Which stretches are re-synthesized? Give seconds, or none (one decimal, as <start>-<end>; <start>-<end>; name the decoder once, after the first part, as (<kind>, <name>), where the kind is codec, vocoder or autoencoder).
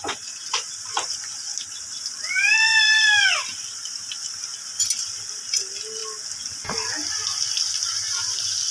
none